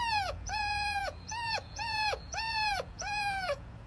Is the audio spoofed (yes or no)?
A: yes